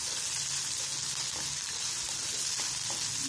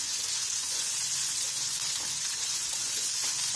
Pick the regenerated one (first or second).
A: second